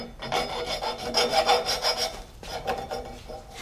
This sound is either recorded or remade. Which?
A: recorded